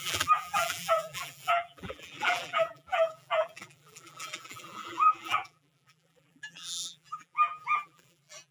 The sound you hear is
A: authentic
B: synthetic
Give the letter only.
B